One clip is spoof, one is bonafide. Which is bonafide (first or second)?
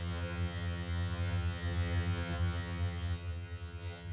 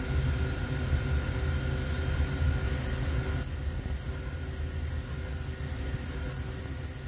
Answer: second